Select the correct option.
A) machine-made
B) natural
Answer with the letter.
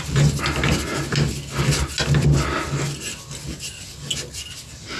B